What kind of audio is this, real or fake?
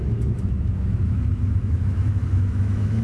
fake